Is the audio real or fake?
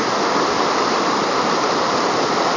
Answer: real